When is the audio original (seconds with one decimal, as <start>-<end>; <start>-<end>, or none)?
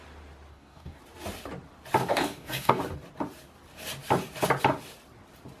0.0-0.5; 1.0-2.1; 2.8-5.6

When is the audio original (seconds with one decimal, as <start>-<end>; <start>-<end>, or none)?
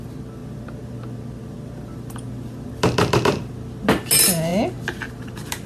0.0-5.7